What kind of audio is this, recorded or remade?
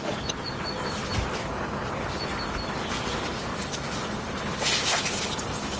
recorded